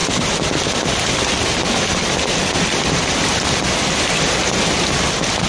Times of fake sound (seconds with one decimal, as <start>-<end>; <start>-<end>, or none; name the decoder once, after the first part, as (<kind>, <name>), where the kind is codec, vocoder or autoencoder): none